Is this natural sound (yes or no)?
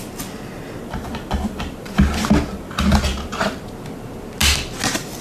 yes